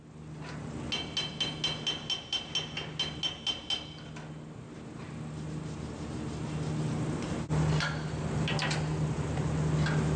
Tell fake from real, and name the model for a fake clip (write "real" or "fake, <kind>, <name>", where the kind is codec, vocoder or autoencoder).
real